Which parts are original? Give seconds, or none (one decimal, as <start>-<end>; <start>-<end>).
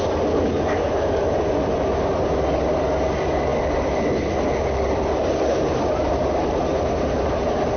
0.0-7.8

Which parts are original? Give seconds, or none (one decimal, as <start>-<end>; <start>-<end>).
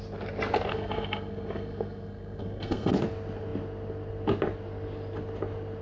0.0-0.7; 2.9-5.8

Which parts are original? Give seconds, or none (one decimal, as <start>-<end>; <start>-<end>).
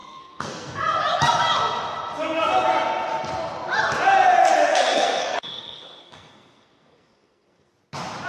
0.8-4.7; 7.7-8.3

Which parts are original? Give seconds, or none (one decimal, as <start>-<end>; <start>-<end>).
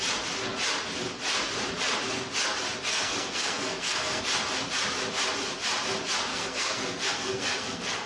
0.0-2.9; 4.2-6.3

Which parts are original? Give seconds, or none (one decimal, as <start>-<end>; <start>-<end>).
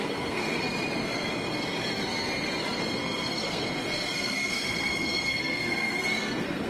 0.6-2.8